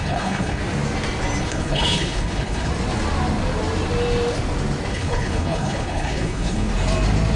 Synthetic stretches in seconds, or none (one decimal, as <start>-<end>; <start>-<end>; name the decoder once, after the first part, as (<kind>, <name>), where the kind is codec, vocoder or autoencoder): 0.0-0.6 (codec, HILCodec); 1.4-2.7; 4.9-6.7